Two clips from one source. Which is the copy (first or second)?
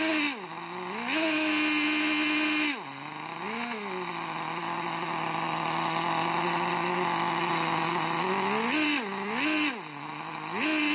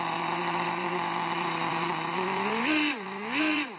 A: second